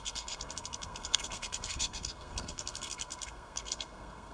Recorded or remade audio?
remade